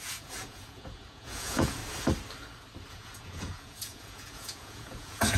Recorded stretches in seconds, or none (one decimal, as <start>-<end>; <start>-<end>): 1.8-2.9

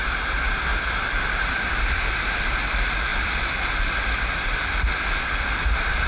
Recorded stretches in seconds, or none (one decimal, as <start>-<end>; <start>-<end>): 0.0-0.7; 2.0-3.1; 3.8-6.1

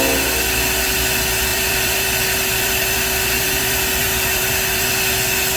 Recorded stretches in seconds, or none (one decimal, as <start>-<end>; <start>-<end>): 0.0-1.5; 4.9-5.6

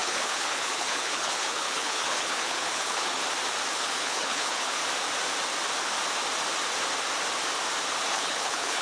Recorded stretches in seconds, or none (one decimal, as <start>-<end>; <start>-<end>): 3.2-3.7; 4.8-8.1

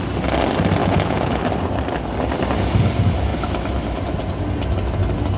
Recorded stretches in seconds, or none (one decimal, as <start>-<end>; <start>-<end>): 0.0-0.8; 1.4-5.4

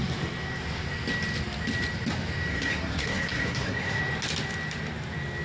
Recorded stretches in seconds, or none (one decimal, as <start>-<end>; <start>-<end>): 0.0-2.5; 4.0-5.4